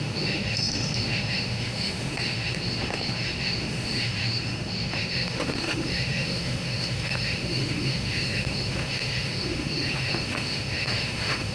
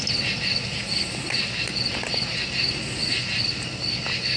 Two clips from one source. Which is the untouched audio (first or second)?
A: second